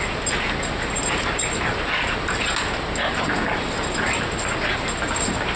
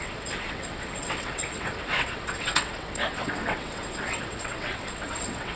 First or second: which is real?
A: first